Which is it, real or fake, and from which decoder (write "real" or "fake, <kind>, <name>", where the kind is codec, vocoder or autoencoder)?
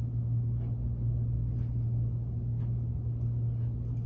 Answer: real